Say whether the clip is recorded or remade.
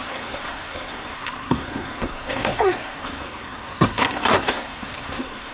remade